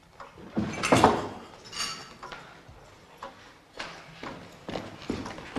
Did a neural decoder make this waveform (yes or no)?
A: no